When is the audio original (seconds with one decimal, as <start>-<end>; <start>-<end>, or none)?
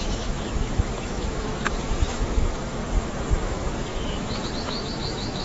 2.8-3.4